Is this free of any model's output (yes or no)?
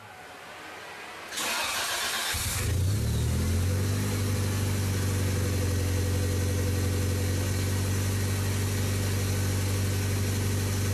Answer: yes